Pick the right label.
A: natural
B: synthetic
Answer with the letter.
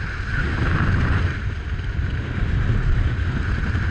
A